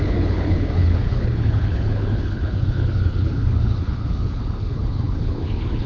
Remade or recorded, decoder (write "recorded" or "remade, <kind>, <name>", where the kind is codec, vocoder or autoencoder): remade, codec, HILCodec